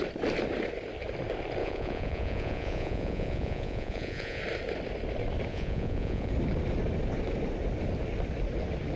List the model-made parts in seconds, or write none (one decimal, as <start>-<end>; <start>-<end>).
1.6-4.4; 5.5-6.3